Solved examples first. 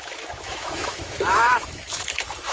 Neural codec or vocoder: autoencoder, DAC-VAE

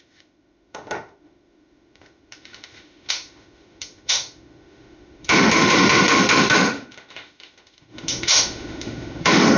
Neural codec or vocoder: autoencoder, DAC-VAE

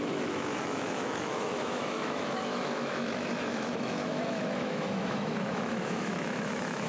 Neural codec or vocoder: autoencoder, DAC-VAE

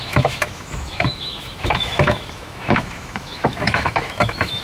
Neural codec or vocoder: autoencoder, DAC-VAE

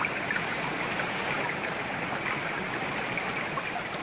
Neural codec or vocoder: none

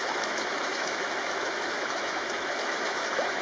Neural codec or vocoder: autoencoder, DAC-VAE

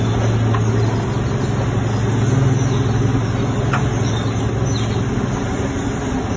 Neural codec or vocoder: none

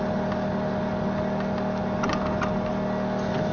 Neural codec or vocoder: none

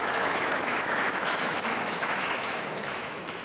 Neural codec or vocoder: autoencoder, DAC-VAE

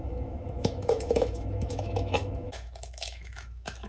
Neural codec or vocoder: autoencoder, DAC-VAE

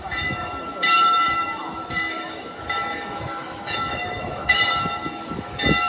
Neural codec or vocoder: autoencoder, DAC-VAE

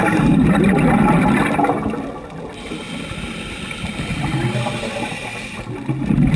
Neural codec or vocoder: none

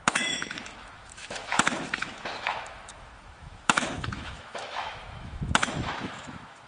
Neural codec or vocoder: autoencoder, DAC-VAE